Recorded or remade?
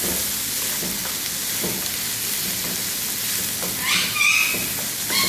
recorded